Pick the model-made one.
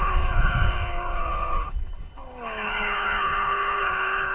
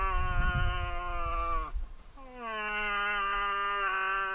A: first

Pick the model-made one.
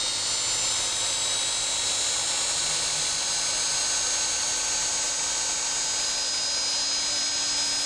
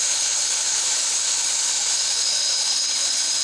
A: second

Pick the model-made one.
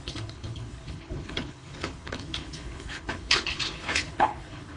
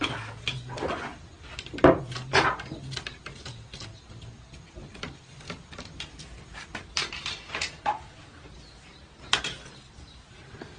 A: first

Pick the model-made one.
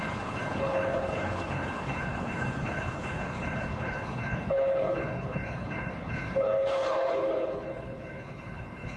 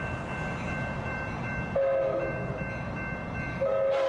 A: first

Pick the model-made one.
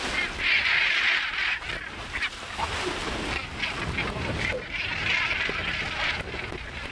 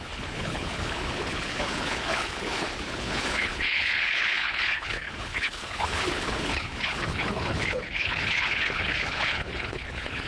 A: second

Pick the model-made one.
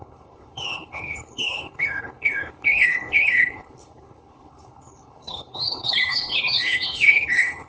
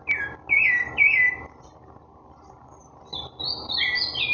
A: first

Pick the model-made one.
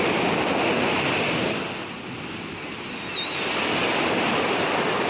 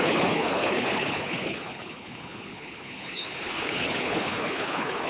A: second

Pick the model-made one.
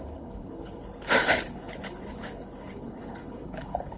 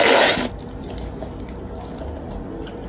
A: first